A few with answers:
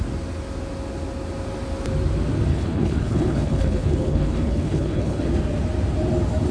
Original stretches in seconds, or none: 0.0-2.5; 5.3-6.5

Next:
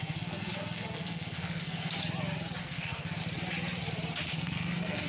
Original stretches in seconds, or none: 2.0-2.6; 3.2-4.3